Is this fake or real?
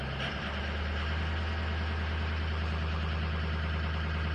real